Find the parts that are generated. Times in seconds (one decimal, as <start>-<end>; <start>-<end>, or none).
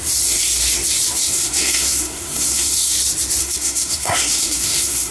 1.2-2.9; 3.4-5.1